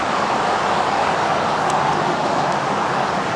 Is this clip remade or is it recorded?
remade